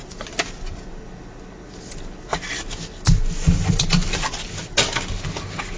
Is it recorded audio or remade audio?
recorded